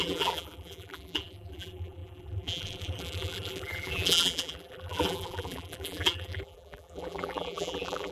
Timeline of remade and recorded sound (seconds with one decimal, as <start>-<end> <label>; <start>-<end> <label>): 0.0-8.1 remade

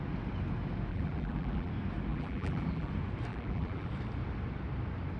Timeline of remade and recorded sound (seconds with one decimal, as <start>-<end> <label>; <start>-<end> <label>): 0.0-0.9 recorded; 0.9-1.7 remade; 1.7-2.1 recorded; 2.1-2.9 remade; 2.9-3.3 recorded; 3.3-3.9 remade; 3.9-5.2 recorded